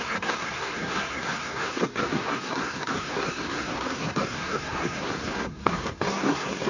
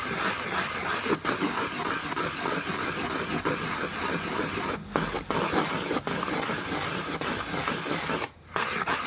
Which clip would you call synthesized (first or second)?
first